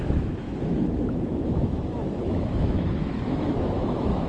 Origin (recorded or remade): remade